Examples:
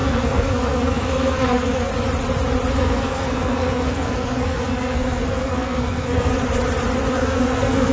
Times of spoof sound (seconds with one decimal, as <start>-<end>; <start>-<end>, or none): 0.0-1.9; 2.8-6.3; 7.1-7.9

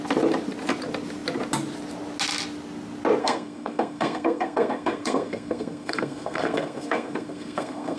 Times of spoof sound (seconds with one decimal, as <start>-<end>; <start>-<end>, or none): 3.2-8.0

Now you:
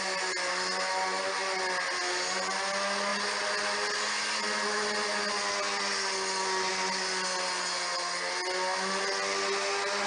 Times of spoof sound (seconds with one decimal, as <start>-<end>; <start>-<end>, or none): none

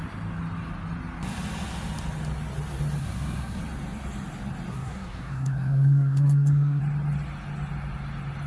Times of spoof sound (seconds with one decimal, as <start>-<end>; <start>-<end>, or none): 3.0-3.6; 4.7-6.8